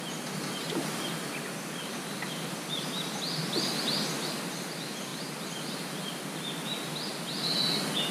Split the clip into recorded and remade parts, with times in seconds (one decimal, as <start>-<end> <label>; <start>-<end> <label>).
0.0-8.1 recorded